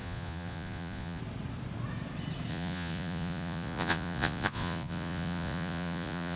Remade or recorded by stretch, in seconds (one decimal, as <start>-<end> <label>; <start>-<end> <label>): 0.0-1.2 remade; 1.2-2.5 recorded; 2.5-6.4 remade